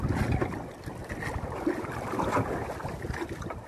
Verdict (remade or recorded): recorded